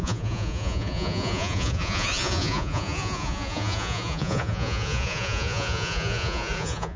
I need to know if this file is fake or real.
fake